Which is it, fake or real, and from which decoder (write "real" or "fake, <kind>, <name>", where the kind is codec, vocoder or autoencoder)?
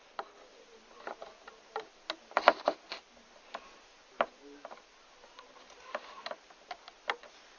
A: real